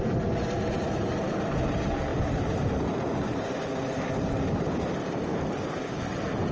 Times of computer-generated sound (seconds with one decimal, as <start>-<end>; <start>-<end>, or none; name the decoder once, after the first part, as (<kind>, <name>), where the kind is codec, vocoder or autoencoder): 2.1-2.8 (vocoder, BigVGAN v2)